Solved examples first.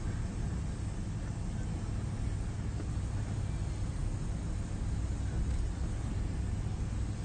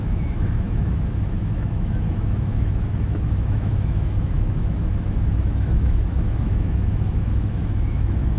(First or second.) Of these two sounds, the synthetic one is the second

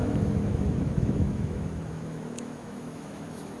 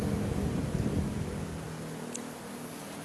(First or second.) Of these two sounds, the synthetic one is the first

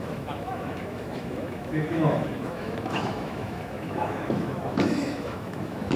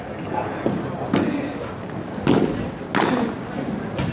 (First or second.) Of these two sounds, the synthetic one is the first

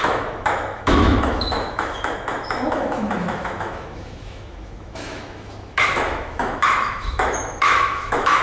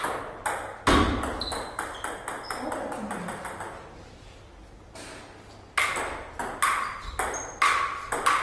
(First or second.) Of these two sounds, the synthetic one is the first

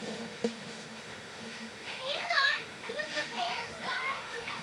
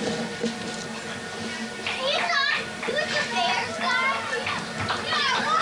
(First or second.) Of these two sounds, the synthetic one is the first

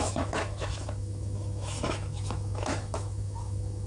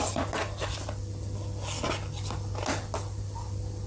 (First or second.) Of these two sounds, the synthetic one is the first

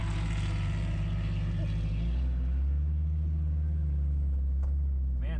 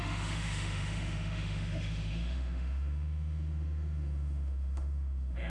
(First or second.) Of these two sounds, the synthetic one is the second